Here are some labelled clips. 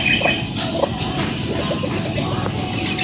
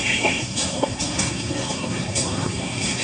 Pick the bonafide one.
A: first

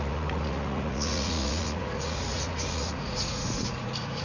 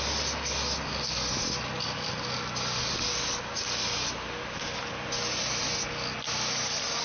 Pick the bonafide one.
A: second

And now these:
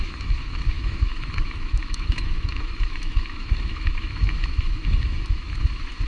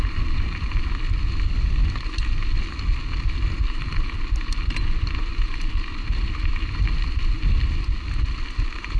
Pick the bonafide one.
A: second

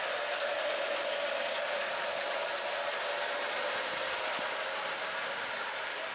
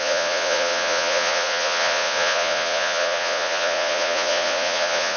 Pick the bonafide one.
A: first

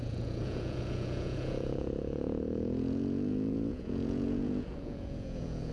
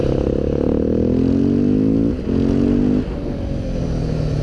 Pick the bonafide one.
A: second